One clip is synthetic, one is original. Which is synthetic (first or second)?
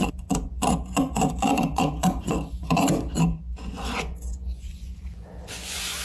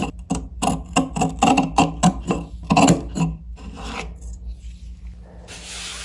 first